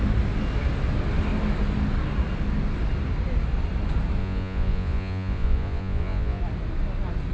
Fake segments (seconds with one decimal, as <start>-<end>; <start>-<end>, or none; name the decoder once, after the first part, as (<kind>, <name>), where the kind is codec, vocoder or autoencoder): 4.2-6.4 (vocoder, Vocos)